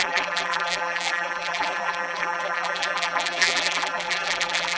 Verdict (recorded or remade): remade